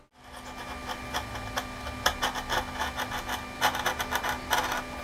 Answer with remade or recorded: recorded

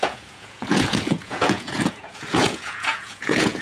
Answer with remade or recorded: remade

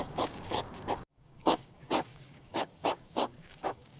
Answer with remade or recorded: remade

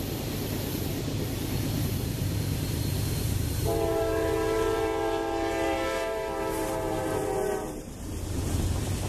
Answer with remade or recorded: remade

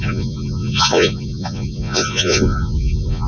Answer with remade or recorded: remade